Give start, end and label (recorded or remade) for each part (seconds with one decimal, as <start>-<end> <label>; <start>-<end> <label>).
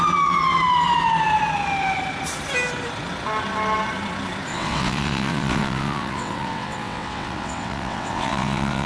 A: 0.0-4.5 recorded; 4.5-8.9 remade